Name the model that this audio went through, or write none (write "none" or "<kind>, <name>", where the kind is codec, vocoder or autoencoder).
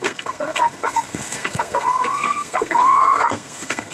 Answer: codec, SNAC